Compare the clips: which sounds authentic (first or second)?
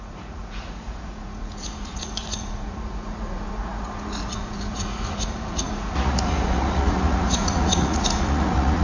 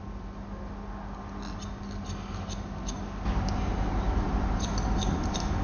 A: second